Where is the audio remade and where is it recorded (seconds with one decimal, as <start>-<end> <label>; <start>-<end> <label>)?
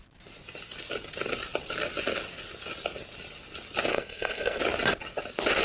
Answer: 0.0-3.9 recorded; 3.9-4.6 remade; 4.6-5.6 recorded